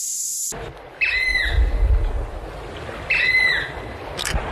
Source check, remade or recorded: recorded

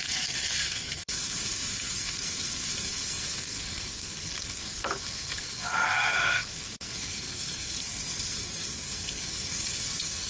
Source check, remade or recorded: remade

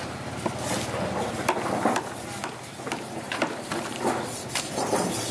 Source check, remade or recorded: recorded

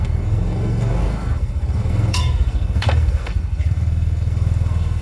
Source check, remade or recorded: remade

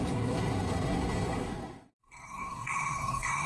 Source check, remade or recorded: remade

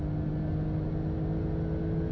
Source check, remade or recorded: recorded